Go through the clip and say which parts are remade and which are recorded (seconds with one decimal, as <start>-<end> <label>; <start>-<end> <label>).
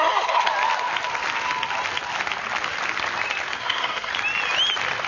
0.0-0.5 remade; 0.5-3.6 recorded; 3.6-4.1 remade; 4.1-5.1 recorded